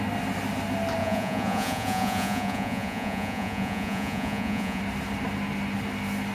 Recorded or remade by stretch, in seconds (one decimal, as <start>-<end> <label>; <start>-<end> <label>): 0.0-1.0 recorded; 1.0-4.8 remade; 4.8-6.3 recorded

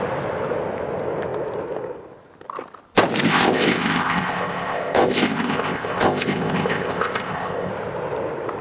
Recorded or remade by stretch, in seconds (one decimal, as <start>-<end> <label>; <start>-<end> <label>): 0.0-3.3 recorded; 3.3-7.7 remade; 7.7-8.6 recorded

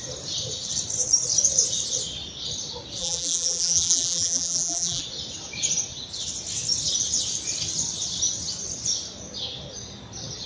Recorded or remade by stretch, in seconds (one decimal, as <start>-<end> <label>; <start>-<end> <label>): 0.0-3.0 recorded; 3.0-5.0 remade; 5.0-10.5 recorded

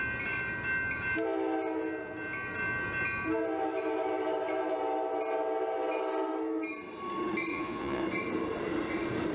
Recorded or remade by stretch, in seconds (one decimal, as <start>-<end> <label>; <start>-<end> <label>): 0.0-7.5 recorded; 7.5-8.0 remade; 8.0-9.3 recorded

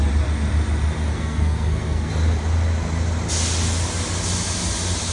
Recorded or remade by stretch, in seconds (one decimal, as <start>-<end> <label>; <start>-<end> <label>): 0.0-1.1 recorded; 1.1-2.1 remade; 2.1-5.1 recorded

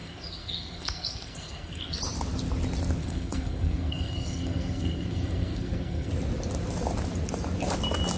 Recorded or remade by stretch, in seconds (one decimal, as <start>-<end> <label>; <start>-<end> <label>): 0.0-2.0 remade; 2.0-3.0 recorded; 3.0-6.1 remade; 6.1-8.2 recorded

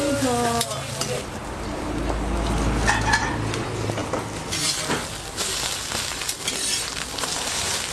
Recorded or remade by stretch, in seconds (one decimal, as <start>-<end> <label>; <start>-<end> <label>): 0.0-7.9 recorded